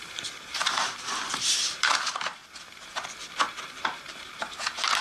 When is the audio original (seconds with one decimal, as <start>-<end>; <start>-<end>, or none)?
2.4-3.8